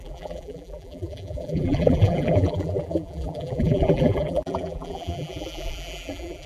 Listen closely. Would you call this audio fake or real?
fake